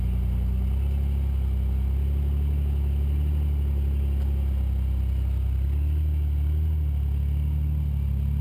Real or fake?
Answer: real